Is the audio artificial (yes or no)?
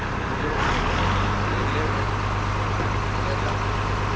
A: no